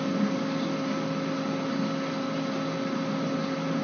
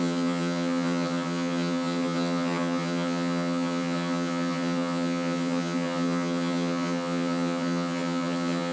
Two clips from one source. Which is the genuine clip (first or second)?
first